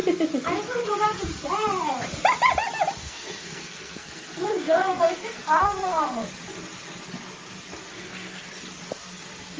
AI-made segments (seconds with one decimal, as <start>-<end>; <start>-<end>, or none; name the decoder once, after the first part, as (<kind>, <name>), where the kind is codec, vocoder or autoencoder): 3.0-6.3 (codec, SNAC); 7.9-8.5

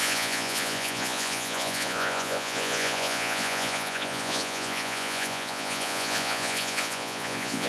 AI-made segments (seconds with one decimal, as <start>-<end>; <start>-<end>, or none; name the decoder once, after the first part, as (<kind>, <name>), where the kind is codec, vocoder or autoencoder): 0.0-7.7 (vocoder, Vocos)

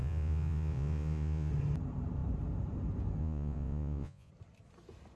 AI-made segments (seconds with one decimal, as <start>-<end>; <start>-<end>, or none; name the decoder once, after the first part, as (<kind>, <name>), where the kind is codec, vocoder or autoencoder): 0.0-1.5 (vocoder, Vocos); 3.2-4.3

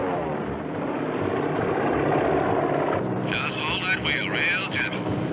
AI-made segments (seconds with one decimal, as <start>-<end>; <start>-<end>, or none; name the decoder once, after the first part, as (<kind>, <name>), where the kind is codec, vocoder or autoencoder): 0.0-2.5 (vocoder, BigVGAN v2); 4.6-5.3

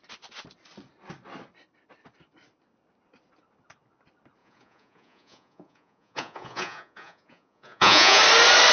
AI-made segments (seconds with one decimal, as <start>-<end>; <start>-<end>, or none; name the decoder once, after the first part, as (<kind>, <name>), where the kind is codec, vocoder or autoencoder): 4.4-8.2 (vocoder, Vocos)

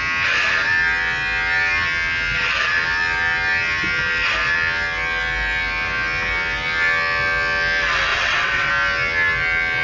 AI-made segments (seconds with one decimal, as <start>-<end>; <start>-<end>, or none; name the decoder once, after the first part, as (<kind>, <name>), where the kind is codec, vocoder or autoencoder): 8.1-8.7 (vocoder, WaveNeXt)

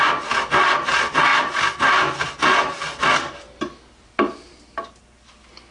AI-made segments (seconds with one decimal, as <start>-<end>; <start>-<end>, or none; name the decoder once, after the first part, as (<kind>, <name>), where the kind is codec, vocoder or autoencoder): none

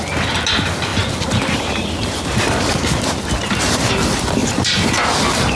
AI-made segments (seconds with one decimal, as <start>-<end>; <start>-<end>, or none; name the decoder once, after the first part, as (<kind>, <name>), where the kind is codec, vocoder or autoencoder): none